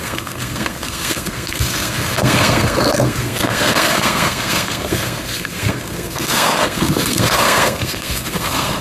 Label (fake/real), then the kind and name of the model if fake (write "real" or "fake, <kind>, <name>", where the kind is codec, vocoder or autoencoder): fake, codec, SNAC